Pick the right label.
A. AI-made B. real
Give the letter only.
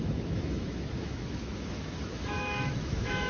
A